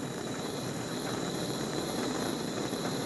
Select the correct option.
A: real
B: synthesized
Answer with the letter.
B